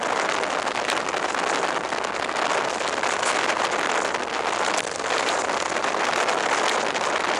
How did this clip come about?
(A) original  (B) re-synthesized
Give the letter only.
A